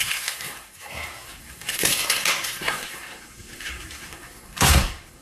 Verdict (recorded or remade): remade